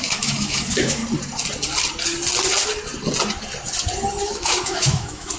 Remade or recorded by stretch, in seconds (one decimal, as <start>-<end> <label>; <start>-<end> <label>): 0.0-1.0 remade; 1.0-4.2 recorded; 4.2-5.4 remade